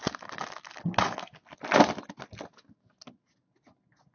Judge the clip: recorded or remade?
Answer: recorded